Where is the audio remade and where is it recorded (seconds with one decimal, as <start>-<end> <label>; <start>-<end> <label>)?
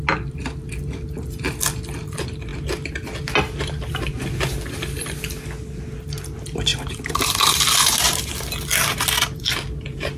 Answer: 0.0-6.7 recorded; 6.7-8.4 remade; 8.4-10.2 recorded